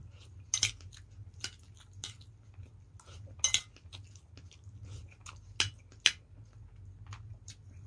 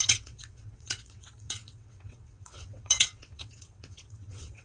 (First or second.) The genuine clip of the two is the first